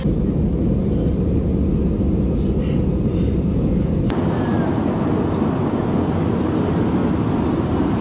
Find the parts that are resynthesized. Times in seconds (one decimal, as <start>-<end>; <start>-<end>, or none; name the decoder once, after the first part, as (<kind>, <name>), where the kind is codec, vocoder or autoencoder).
3.5-4.0 (codec, DAC)